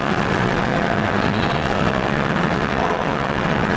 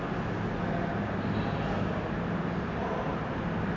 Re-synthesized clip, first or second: first